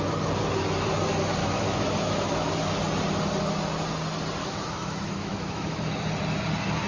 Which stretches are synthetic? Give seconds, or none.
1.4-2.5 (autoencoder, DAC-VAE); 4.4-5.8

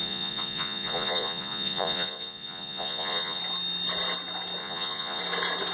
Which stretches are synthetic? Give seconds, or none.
0.0-3.4 (vocoder, Vocos); 4.6-5.2

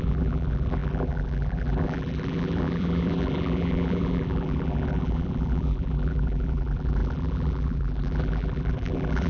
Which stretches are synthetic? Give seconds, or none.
0.0-9.3 (vocoder, BigVGAN v2)

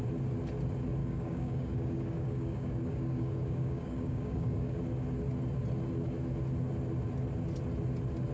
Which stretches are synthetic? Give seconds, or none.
1.0-4.8 (codec, DAC)

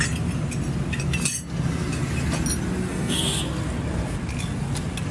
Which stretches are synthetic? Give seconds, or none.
2.9-3.4 (codec, SNAC)

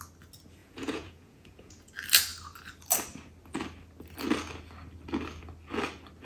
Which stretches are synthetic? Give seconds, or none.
0.6-1.9 (vocoder, Vocos)